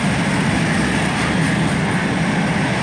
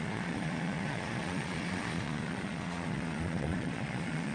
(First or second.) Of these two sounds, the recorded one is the first